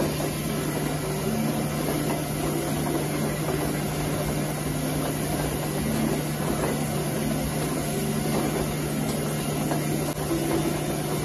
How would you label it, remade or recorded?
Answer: recorded